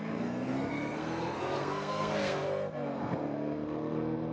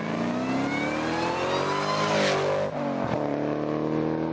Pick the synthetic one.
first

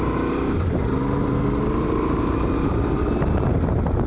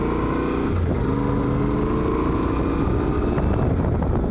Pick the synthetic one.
first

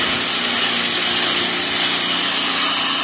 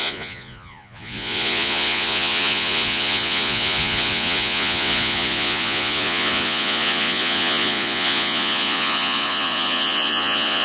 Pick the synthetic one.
second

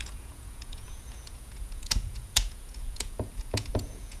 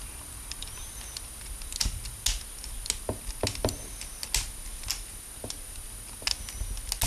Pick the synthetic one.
first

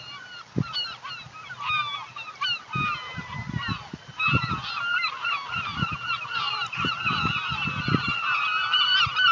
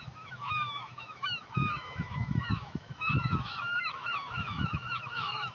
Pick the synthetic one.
second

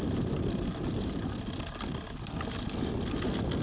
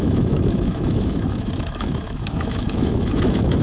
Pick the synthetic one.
second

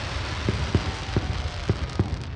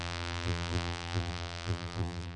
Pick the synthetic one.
second